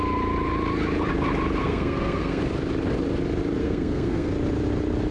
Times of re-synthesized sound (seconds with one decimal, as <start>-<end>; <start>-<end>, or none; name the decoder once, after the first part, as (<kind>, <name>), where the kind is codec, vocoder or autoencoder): 1.6-2.4 (codec, SNAC); 3.6-4.3